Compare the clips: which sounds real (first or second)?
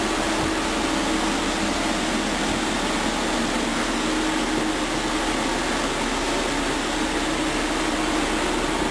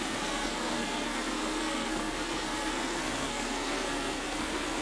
first